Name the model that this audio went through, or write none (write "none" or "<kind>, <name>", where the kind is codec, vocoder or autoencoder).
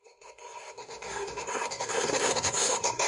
codec, SNAC